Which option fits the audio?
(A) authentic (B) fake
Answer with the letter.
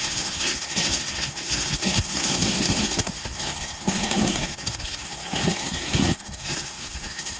B